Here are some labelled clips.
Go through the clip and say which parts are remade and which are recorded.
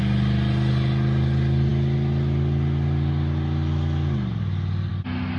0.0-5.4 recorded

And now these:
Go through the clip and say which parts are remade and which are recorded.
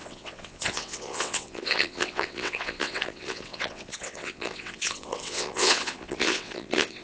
0.0-7.0 remade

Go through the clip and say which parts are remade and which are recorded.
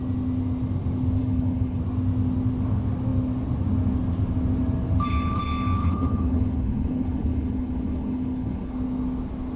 0.0-1.2 recorded; 1.2-1.8 remade; 1.8-5.8 recorded; 5.8-8.7 remade; 8.7-9.6 recorded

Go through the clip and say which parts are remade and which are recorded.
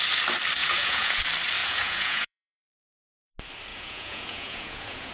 0.0-0.6 recorded; 0.6-1.2 remade; 1.2-1.6 recorded; 1.6-3.3 remade; 3.3-3.7 recorded; 3.7-5.1 remade